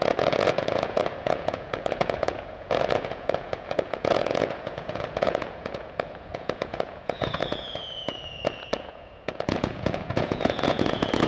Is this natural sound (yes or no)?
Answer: no